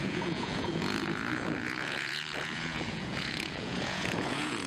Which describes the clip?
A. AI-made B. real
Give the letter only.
A